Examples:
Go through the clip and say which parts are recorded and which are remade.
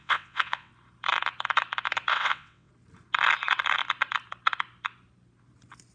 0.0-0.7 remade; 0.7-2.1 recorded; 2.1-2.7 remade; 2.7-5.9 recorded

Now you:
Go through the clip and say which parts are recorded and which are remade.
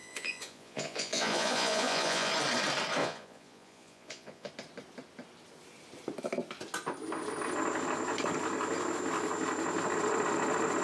0.0-2.3 remade; 2.3-3.0 recorded; 3.0-4.5 remade; 4.5-10.8 recorded